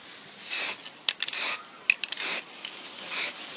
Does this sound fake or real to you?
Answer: real